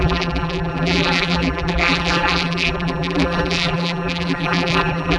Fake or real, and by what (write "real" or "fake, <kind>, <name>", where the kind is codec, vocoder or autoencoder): fake, vocoder, BigVGAN v2